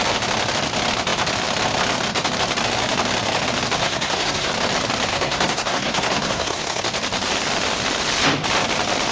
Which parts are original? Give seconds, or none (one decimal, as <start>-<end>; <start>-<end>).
0.0-3.8; 4.5-5.1; 6.8-9.1